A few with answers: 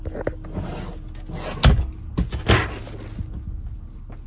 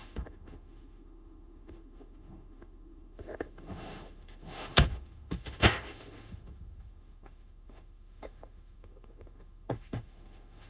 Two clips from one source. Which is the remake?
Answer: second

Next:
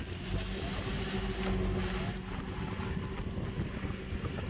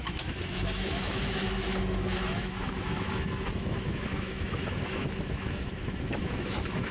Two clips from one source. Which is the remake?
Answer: second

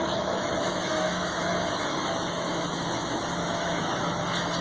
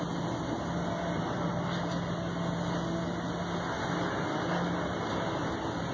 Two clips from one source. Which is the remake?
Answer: first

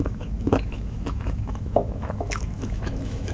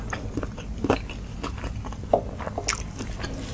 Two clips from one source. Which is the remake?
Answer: first